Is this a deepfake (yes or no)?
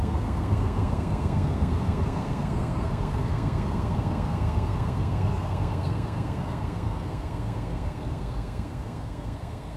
yes